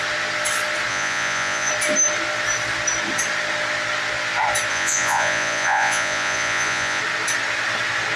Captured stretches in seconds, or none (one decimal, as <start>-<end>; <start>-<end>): 0.0-0.9; 1.7-4.7; 7.0-8.2